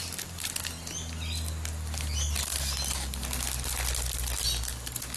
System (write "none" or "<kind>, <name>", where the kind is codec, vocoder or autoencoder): none